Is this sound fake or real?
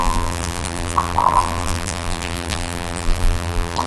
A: fake